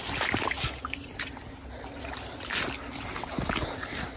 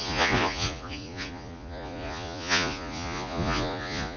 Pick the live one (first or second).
first